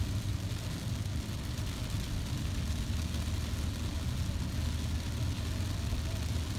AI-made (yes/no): no